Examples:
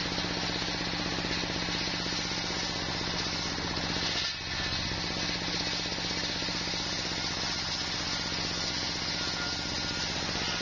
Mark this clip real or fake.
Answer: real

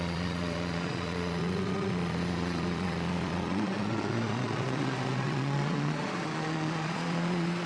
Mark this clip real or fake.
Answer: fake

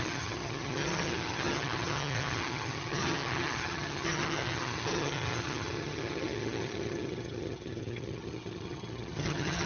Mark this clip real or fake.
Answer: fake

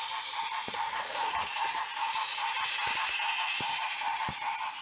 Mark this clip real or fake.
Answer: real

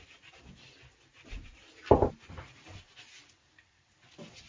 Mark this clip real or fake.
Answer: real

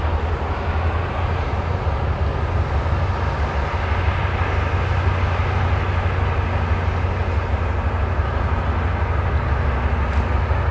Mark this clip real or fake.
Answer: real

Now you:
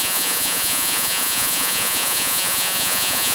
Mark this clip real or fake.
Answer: fake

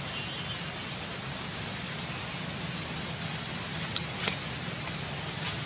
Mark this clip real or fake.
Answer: real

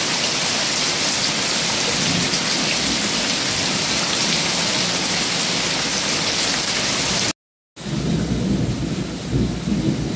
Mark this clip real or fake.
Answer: real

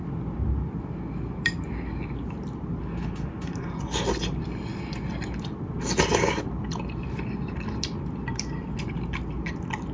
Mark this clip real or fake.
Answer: real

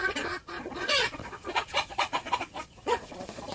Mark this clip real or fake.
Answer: fake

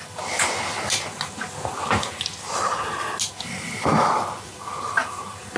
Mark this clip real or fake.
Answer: real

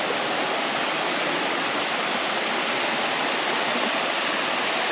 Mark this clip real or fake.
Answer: real